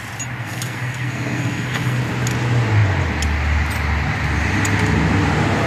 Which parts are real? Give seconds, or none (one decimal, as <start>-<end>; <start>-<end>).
0.0-0.4; 2.0-5.7

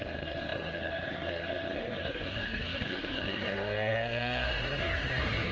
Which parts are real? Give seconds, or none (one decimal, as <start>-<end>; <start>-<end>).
none

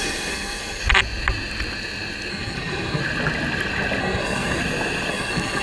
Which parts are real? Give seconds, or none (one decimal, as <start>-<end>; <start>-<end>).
0.8-2.3; 3.0-4.0; 4.6-5.1

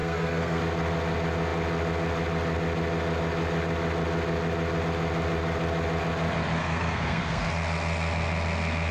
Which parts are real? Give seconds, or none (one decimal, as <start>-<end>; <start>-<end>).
0.6-6.6; 7.5-8.9

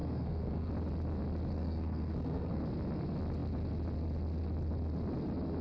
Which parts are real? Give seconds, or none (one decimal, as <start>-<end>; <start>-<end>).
0.7-1.5; 2.6-5.6

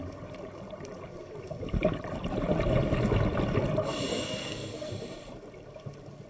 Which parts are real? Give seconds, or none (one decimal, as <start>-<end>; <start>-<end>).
0.0-4.1; 4.9-6.3

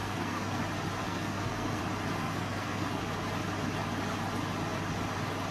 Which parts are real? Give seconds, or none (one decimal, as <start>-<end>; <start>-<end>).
0.6-1.0; 1.8-2.2; 3.0-5.5